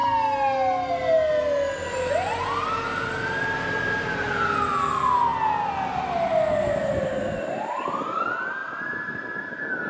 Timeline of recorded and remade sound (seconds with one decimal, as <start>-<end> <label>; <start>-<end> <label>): 0.0-9.9 recorded